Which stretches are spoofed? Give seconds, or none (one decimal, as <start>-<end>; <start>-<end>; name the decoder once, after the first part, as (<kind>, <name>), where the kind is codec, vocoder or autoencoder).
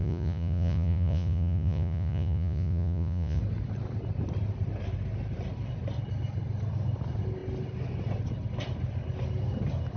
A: 0.0-3.4 (vocoder, Vocos)